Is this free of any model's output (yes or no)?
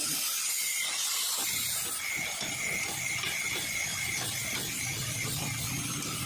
yes